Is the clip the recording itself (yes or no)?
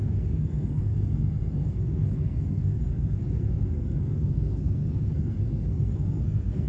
no